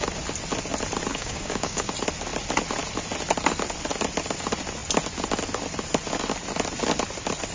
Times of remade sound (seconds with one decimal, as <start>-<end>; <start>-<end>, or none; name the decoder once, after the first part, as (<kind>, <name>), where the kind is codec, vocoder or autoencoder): 1.1-1.9 (codec, DAC)